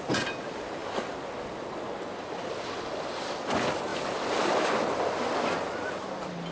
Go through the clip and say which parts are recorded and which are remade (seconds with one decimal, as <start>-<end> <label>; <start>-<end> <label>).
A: 0.0-6.5 recorded